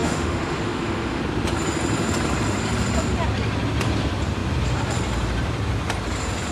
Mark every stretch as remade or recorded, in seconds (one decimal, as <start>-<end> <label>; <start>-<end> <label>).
0.0-1.2 remade; 1.2-6.5 recorded